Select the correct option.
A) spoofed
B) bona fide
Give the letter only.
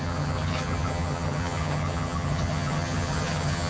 A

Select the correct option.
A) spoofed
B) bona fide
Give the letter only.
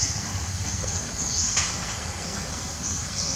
A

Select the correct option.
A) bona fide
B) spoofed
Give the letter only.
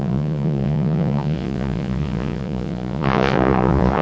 B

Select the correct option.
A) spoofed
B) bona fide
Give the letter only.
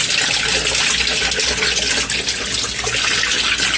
B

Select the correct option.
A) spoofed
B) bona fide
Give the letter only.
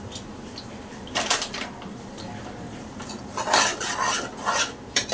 A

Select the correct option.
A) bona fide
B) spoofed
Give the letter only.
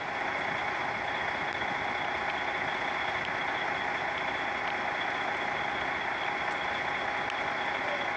A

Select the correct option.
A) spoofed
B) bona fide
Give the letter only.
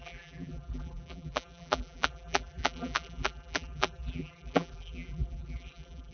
A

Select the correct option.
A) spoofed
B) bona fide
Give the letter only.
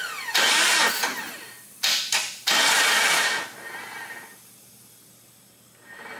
B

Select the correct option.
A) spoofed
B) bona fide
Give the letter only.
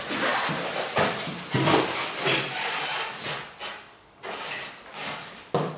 B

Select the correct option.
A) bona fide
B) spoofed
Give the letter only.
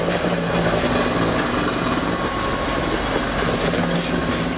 A